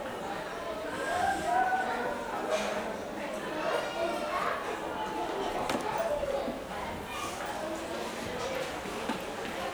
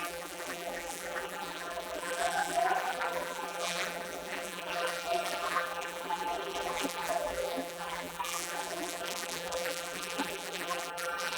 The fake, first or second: second